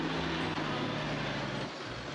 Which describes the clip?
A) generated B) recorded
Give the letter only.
B